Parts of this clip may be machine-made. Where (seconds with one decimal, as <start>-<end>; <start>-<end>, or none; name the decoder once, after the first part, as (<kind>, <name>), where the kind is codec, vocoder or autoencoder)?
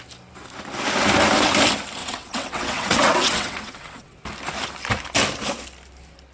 2.0-4.2 (vocoder, WaveNeXt)